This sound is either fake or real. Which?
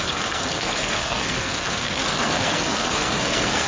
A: fake